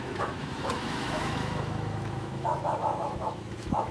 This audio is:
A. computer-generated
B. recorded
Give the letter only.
A